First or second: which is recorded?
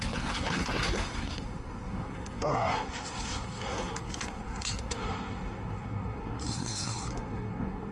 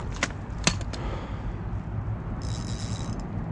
second